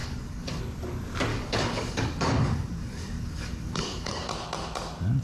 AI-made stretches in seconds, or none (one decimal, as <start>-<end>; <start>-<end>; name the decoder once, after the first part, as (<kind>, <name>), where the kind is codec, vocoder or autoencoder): 0.0-0.6 (codec, DAC); 1.3-4.3